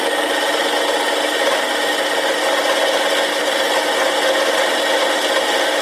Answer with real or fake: real